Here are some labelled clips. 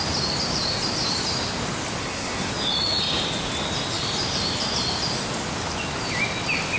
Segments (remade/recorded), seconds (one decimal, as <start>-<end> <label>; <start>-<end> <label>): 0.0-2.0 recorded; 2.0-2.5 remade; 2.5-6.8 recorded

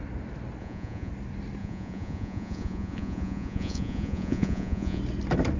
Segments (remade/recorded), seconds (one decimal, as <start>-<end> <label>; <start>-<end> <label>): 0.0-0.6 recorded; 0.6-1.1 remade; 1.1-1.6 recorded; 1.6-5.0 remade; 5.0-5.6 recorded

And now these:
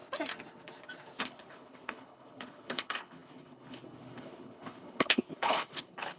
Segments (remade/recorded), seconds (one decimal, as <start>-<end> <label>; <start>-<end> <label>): 0.0-1.2 recorded; 1.2-6.2 remade

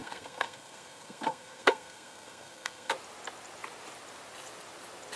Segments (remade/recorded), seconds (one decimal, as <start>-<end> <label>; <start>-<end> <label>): 0.0-2.9 remade; 2.9-5.2 recorded

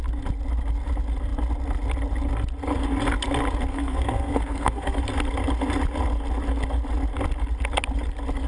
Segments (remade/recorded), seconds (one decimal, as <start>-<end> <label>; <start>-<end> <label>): 0.0-3.7 recorded; 3.7-5.0 remade; 5.0-8.5 recorded